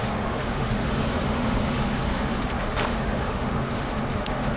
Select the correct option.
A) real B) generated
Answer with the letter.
B